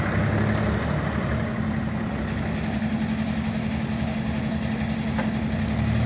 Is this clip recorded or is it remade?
recorded